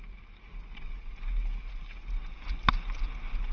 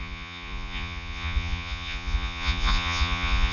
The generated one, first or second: second